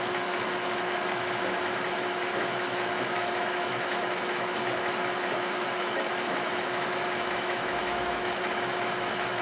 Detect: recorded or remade remade